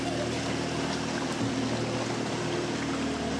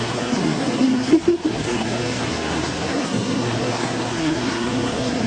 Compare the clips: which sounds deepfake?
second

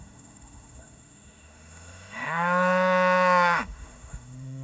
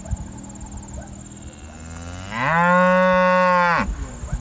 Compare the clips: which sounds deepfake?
first